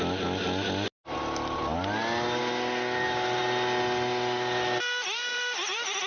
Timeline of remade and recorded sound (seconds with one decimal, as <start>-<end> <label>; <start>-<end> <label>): 0.0-5.3 recorded; 5.3-6.1 remade